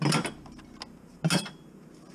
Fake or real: real